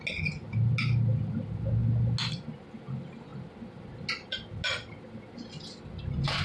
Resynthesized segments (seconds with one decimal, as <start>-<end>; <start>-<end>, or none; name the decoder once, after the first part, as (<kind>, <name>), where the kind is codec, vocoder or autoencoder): none